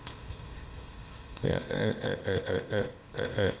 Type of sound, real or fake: fake